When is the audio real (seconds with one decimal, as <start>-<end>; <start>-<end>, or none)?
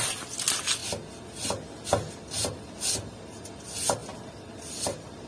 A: 0.0-5.3